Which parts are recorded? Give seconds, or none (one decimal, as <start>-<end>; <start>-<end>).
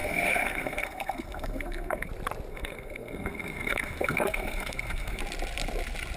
2.1-2.5; 5.2-6.2